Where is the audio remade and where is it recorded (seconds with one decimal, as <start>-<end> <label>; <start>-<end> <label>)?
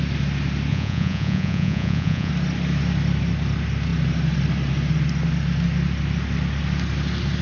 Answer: 0.0-0.7 recorded; 0.7-2.3 remade; 2.3-7.4 recorded